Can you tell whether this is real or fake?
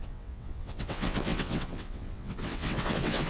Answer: fake